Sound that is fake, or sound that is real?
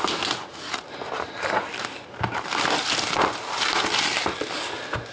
real